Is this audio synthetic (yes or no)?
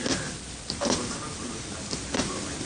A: no